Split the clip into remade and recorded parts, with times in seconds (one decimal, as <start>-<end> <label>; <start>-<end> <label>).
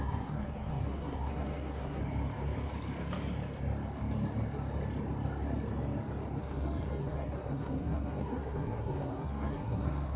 0.0-2.0 remade; 2.0-6.4 recorded; 6.4-10.2 remade